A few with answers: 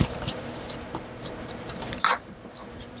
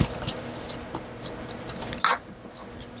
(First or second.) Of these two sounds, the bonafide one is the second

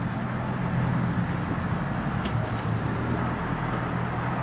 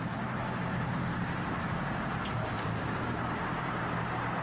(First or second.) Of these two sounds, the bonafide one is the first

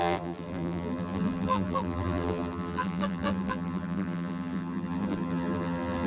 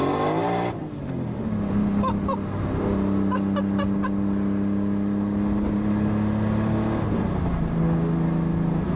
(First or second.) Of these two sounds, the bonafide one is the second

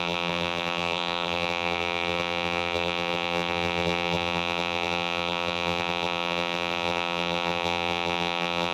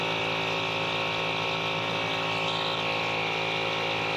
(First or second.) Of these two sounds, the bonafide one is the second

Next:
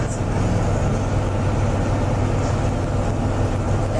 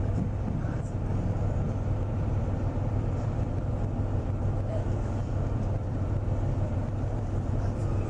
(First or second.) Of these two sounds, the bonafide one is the first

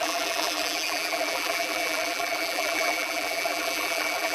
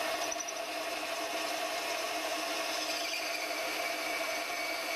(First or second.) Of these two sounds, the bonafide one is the second